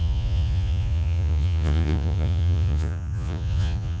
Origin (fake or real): fake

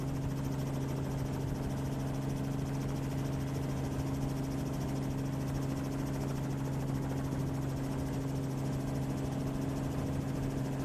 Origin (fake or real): real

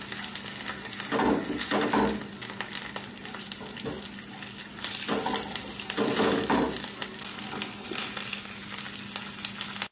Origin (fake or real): real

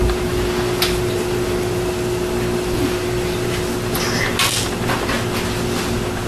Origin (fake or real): real